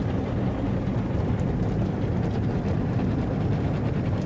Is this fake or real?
real